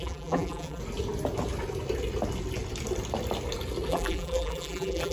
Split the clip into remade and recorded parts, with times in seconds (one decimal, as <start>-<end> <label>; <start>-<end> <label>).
0.0-0.8 remade; 0.8-3.9 recorded; 3.9-5.1 remade